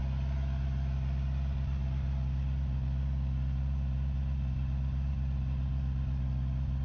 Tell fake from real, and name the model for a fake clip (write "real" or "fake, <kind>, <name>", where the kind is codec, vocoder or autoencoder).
real